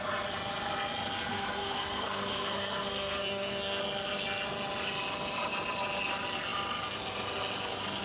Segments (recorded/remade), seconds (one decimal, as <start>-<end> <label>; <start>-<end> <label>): 0.0-1.3 recorded; 1.3-3.8 remade; 3.8-8.0 recorded